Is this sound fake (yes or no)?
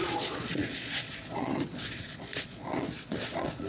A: yes